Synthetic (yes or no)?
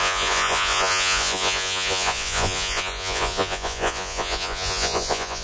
yes